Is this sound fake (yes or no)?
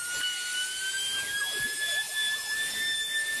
no